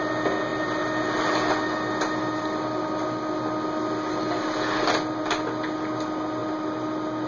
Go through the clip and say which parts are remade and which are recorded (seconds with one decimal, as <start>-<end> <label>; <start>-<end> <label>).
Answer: 0.0-7.3 recorded